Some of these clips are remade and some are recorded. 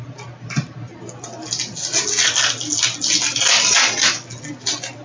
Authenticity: recorded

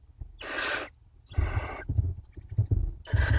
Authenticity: recorded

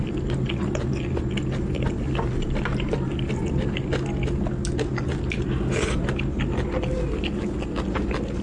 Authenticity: recorded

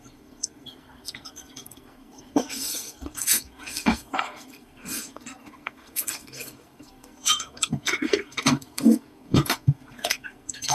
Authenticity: remade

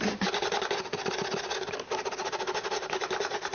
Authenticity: recorded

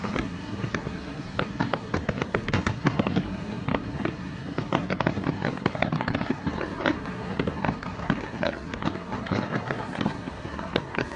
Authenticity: remade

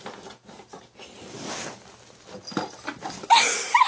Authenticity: recorded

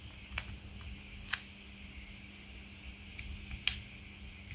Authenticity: recorded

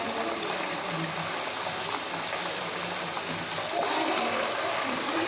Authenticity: recorded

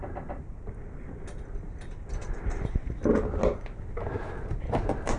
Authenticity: recorded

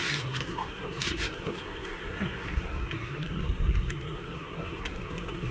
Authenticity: remade